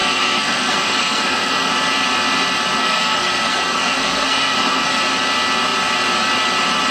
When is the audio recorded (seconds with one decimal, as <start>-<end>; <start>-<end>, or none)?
1.7-2.8; 5.0-6.9